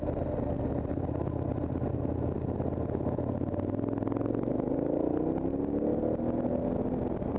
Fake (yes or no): no